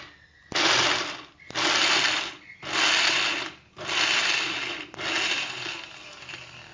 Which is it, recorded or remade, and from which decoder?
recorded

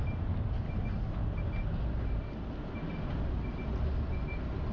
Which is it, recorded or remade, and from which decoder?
recorded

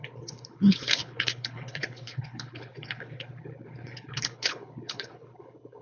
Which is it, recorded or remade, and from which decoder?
remade, codec, HILCodec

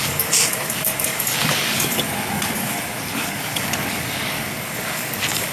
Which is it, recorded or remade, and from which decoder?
remade, codec, DAC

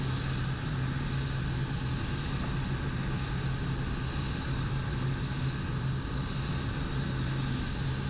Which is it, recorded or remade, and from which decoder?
recorded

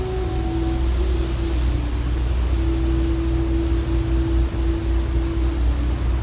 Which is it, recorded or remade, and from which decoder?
recorded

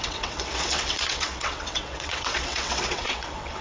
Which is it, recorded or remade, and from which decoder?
remade, vocoder, WaveNeXt